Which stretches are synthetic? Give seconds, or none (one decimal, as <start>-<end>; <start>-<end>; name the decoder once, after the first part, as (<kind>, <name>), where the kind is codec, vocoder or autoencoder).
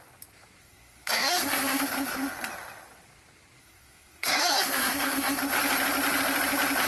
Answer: 0.6-1.8 (codec, SNAC); 3.6-5.4